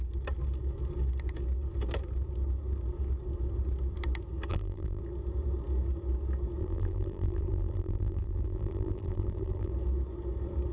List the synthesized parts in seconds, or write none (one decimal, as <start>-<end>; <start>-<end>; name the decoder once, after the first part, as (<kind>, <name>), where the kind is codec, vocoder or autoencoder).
4.5-5.0 (vocoder, BigVGAN v2); 6.6-9.7